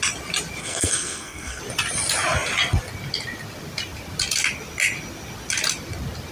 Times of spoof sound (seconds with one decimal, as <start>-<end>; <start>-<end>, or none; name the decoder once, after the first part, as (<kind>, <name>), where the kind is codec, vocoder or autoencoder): 0.6-1.6 (codec, SNAC)